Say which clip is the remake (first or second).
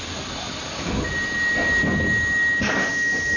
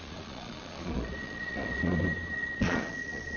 second